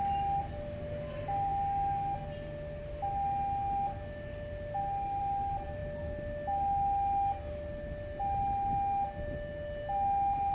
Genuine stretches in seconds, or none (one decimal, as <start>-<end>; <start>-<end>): 0.0-10.5